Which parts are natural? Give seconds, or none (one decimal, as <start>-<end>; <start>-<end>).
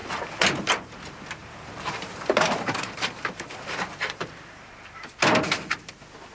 0.7-1.4; 5.2-6.3